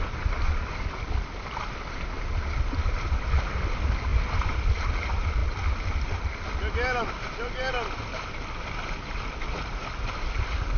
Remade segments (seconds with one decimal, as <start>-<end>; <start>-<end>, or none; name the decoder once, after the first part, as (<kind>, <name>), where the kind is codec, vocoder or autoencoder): none